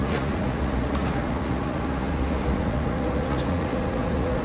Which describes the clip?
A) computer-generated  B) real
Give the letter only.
A